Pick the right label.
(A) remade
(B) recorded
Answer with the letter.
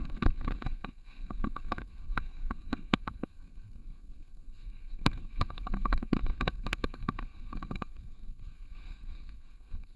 A